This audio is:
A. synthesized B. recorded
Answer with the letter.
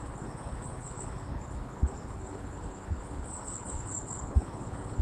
A